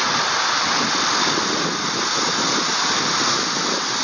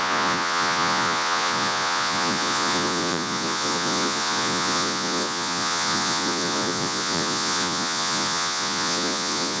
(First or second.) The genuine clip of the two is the first